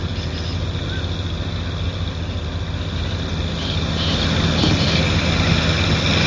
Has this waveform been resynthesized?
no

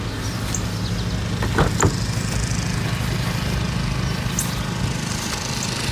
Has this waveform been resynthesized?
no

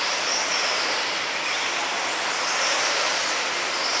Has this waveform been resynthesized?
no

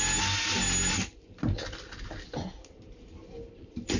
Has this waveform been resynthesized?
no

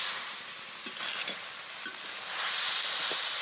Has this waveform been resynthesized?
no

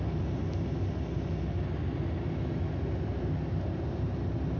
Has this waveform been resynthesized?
no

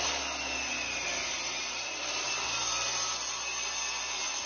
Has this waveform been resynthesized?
no